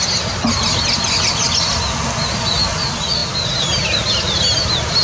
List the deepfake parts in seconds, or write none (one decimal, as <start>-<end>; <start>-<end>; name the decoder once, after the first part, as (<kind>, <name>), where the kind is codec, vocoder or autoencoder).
none